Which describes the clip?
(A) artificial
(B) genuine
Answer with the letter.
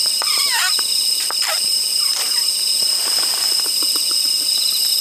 B